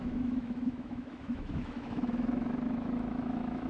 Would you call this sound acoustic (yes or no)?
no